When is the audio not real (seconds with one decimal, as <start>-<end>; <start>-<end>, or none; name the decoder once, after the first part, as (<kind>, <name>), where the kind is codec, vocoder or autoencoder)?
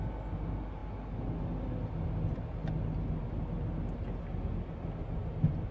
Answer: none